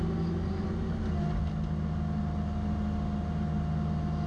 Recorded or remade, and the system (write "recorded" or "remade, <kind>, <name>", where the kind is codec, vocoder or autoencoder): recorded